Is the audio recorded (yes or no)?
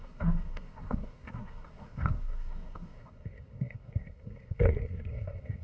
no